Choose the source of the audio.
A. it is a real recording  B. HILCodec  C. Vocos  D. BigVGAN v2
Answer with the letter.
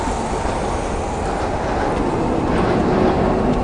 A